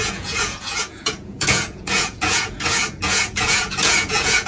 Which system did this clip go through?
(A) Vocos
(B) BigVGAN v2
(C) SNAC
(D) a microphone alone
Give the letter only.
A